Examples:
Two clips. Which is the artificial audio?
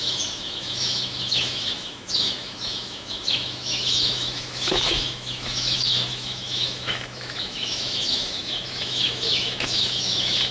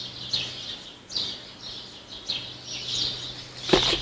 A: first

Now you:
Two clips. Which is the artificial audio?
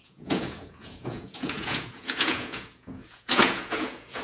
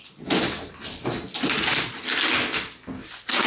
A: first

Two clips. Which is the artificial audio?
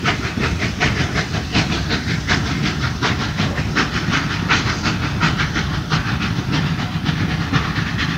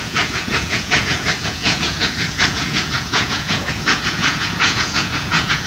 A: second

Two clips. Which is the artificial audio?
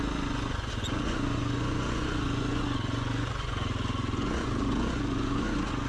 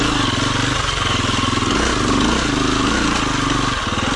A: first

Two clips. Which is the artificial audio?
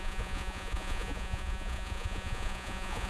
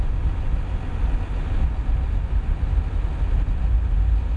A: first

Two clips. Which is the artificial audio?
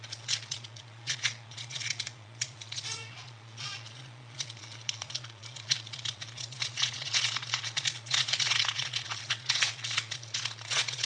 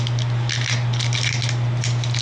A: first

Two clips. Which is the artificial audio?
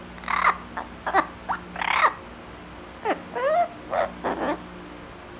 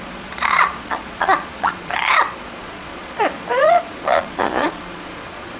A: second